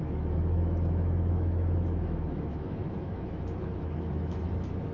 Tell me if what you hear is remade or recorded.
remade